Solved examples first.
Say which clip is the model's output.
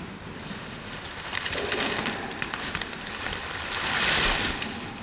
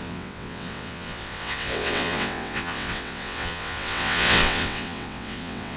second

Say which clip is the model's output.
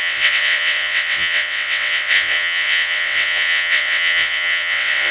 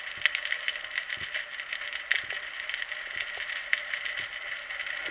first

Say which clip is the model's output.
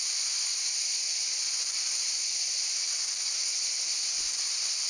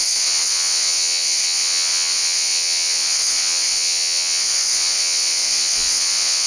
second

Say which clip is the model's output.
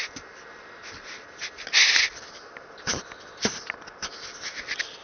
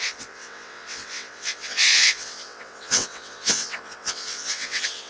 second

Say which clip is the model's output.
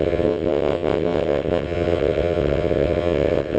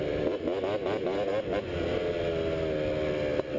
first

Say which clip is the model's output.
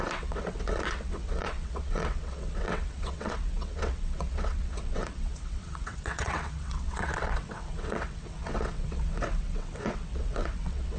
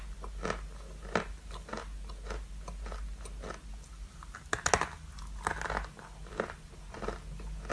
first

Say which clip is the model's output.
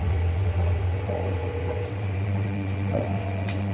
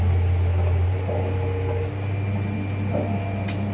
first